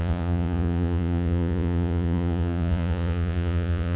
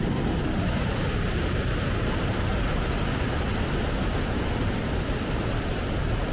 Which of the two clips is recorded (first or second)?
second